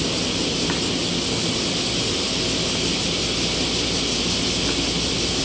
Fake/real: real